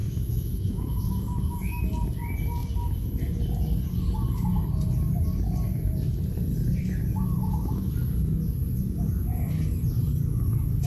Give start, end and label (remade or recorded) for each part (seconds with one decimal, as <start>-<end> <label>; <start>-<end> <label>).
0.0-1.8 remade; 1.8-7.4 recorded; 7.4-7.9 remade; 7.9-10.9 recorded